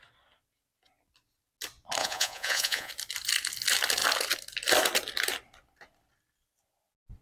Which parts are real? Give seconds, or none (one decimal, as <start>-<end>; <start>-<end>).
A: 0.0-2.0; 2.9-7.2